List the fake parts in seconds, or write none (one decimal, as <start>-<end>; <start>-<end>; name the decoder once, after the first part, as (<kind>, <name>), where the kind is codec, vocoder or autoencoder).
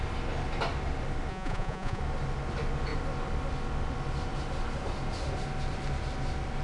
1.3-2.0 (vocoder, Vocos)